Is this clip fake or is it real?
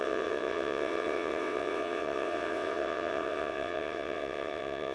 fake